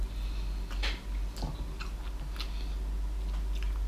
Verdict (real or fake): real